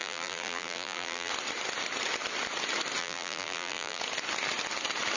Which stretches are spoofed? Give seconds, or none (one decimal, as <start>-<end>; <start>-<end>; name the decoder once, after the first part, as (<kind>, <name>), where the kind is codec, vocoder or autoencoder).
0.0-1.3 (vocoder, BigVGAN v2); 3.0-4.0